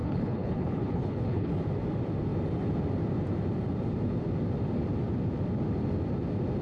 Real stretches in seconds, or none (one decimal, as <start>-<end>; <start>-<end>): 1.5-6.6